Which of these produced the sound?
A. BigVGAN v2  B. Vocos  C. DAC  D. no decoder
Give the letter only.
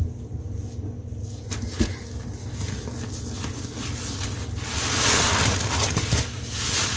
D